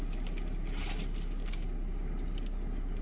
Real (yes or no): yes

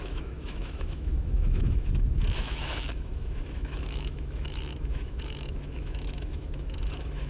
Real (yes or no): no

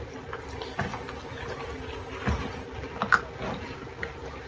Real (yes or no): yes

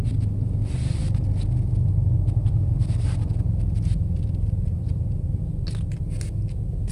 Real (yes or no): yes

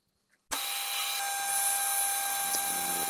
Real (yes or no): yes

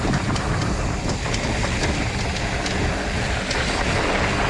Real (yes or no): yes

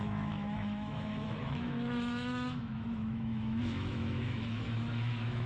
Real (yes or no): no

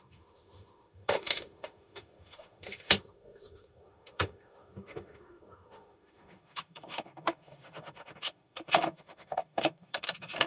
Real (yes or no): no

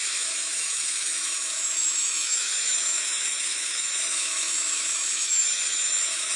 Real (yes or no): no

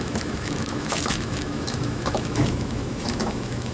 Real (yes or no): no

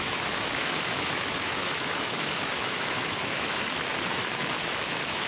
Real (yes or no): no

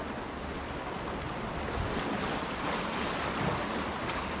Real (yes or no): yes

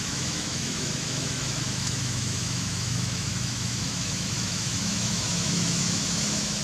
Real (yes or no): no